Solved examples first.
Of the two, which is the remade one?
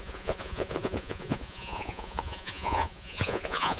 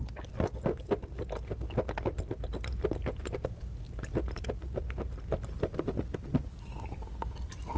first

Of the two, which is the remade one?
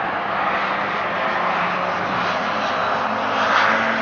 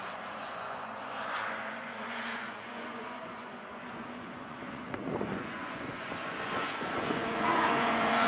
second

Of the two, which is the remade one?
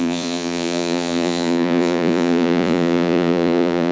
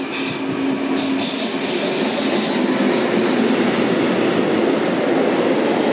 first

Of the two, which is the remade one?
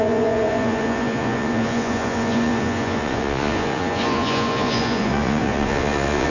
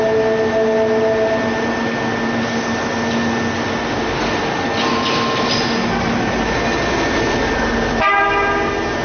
first